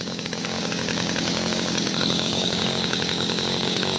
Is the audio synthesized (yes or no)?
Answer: yes